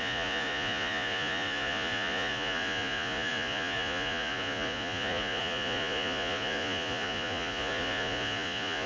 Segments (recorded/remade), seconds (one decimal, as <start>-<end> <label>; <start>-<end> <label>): 0.0-8.9 remade